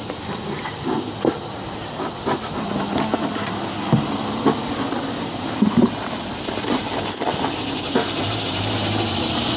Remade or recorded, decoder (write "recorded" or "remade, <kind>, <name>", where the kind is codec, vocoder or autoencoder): recorded